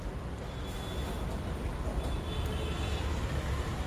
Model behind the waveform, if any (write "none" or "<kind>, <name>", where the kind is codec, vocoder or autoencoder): none